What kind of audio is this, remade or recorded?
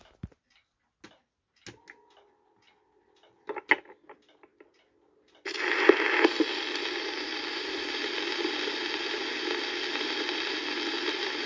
recorded